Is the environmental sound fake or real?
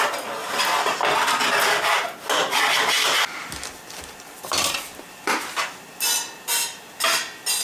real